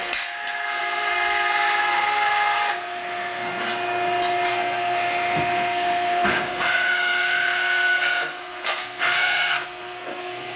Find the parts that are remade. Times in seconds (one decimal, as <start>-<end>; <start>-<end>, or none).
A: 0.0-3.5; 4.5-10.6